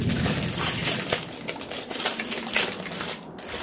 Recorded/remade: recorded